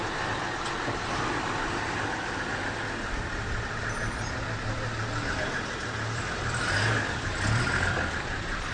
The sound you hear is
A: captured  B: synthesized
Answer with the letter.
A